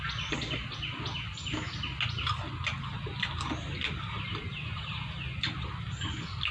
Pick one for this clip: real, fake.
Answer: real